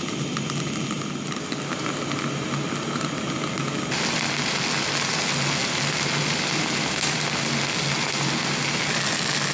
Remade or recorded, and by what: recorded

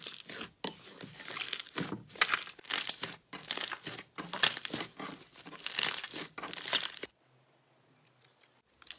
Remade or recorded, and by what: recorded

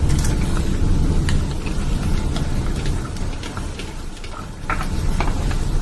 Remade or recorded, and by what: recorded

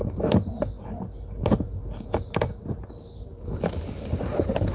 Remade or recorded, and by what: recorded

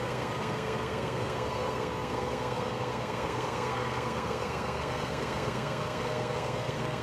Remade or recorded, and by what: remade, codec, SNAC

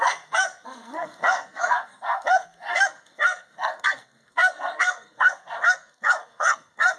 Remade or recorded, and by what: remade, codec, SNAC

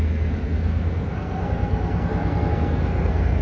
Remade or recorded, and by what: remade, codec, SNAC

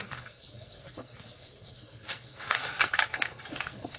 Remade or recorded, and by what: remade, codec, SNAC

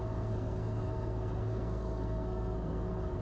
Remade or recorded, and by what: remade, codec, SNAC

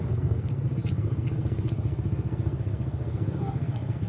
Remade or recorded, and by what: remade, codec, SNAC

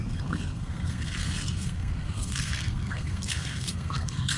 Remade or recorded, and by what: remade, codec, SNAC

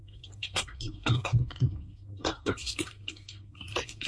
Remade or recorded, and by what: remade, codec, SNAC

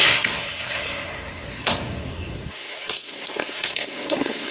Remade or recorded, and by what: remade, codec, SNAC